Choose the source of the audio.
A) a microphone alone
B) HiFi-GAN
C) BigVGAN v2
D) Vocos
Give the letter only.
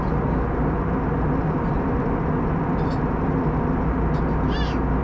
A